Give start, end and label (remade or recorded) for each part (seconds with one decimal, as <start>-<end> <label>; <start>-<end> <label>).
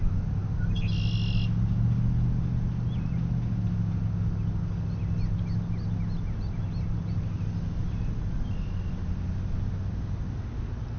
0.0-11.0 recorded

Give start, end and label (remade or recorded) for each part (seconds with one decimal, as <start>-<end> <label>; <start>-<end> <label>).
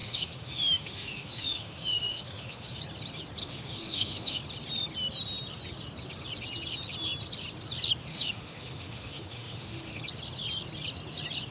0.0-2.8 remade; 2.8-3.4 recorded; 3.4-4.4 remade; 4.4-8.1 recorded; 8.1-10.0 remade; 10.0-11.5 recorded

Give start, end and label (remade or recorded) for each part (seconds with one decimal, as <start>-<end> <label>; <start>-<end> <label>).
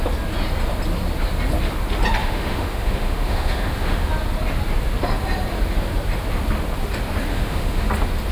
0.0-2.2 recorded; 2.2-4.1 remade; 4.1-7.3 recorded; 7.3-7.9 remade; 7.9-8.3 recorded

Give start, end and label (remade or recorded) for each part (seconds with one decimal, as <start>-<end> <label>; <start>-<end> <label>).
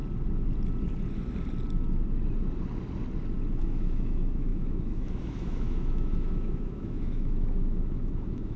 0.0-3.6 recorded; 3.6-8.6 remade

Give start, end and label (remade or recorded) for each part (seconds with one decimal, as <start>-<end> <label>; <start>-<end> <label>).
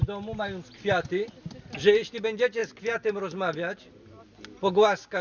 0.0-5.2 recorded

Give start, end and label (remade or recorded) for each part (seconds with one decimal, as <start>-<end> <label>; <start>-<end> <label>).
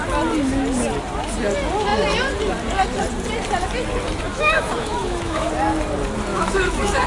0.0-4.3 recorded; 4.3-5.5 remade; 5.5-6.3 recorded; 6.3-7.1 remade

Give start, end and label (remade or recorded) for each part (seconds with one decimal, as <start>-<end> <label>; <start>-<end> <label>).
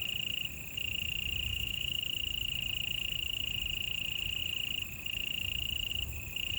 0.0-1.5 recorded; 1.5-2.0 remade; 2.0-6.6 recorded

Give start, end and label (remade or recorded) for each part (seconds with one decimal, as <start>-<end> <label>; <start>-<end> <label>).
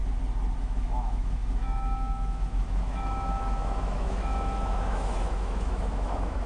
0.0-0.6 recorded; 0.6-6.5 remade